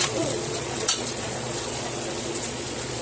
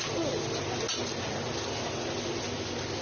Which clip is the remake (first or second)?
first